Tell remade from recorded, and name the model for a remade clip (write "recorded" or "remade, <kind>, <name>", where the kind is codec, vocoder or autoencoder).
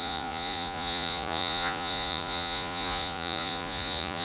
remade, vocoder, Vocos